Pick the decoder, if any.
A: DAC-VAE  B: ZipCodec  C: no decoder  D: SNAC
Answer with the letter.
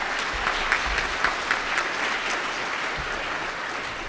C